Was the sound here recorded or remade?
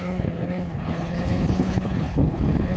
remade